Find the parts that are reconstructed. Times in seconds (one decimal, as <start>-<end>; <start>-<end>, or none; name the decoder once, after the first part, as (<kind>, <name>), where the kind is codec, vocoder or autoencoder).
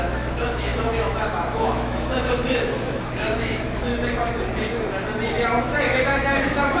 0.0-3.9 (autoencoder, DAC-VAE); 5.6-6.8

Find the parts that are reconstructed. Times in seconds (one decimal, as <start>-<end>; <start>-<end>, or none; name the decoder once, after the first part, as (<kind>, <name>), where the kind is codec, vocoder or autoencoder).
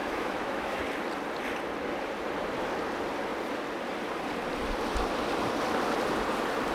0.0-0.8 (autoencoder, DAC-VAE)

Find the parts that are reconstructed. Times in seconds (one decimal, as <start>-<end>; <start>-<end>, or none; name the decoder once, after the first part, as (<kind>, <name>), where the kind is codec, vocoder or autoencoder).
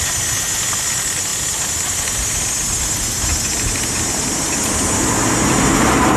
none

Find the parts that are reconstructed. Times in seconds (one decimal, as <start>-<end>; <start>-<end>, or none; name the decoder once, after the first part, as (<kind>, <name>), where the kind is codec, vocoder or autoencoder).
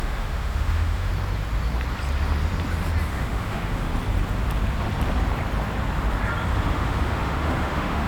0.0-1.1 (autoencoder, DAC-VAE); 3.1-3.9; 6.7-8.1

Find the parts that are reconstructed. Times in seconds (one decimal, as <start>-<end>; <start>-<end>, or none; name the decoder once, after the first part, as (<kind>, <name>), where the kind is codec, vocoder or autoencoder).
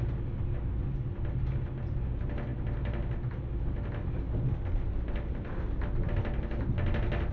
none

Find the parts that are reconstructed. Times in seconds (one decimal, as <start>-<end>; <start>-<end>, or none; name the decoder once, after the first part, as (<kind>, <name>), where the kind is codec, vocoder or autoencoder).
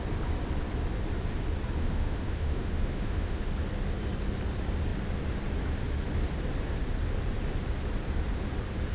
1.8-3.5 (autoencoder, DAC-VAE)